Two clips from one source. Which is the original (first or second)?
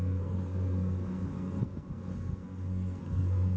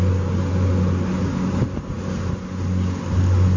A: second